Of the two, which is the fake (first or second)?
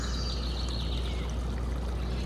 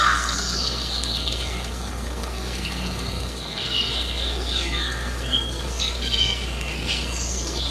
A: second